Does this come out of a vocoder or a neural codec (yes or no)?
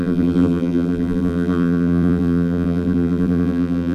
yes